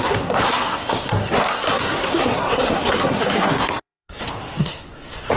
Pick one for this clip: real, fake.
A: fake